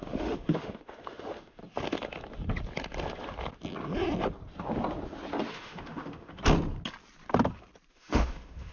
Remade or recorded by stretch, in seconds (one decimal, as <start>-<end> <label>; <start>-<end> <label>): 0.0-1.6 remade; 1.6-5.5 recorded; 5.5-6.4 remade; 6.4-7.9 recorded; 7.9-8.7 remade